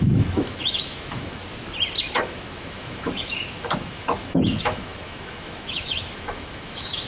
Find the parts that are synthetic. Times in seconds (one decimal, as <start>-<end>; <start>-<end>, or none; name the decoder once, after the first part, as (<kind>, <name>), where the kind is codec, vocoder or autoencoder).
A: 0.0-1.4 (autoencoder, DAC-VAE); 2.0-7.1

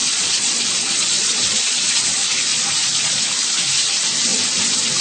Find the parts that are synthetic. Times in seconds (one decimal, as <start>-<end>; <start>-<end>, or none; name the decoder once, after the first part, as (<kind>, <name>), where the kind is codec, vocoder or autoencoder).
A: 0.0-1.9 (vocoder, Vocos); 2.5-3.2

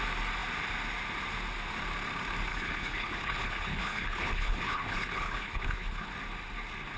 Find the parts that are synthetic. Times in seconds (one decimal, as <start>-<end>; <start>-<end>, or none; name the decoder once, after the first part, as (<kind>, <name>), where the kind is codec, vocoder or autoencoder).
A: 2.5-6.1 (codec, HILCodec)

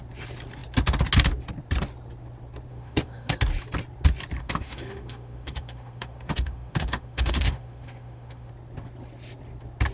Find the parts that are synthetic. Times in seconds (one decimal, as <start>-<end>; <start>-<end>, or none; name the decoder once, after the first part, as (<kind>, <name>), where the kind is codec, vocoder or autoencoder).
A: 2.7-3.3 (autoencoder, DAC-VAE); 4.4-8.5

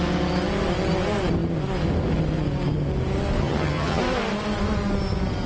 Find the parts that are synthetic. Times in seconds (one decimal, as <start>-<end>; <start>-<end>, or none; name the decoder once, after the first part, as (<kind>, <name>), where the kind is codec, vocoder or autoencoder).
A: 3.4-4.0 (vocoder, HiFi-GAN)

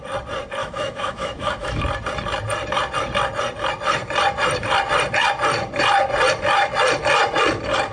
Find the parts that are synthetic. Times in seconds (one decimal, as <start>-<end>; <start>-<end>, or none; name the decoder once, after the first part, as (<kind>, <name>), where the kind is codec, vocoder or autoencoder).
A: 0.6-1.8 (autoencoder, DAC-VAE)

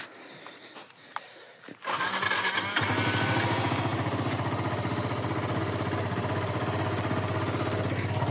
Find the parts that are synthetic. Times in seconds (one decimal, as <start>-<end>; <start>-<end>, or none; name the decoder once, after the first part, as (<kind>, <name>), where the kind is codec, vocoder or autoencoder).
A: none